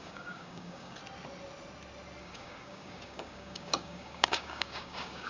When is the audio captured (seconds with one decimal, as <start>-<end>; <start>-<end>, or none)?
1.0-2.2